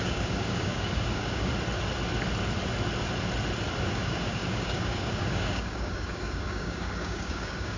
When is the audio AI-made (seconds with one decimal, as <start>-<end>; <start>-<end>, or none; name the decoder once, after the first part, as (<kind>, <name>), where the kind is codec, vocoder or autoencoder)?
0.0-1.5 (codec, DAC); 3.8-7.8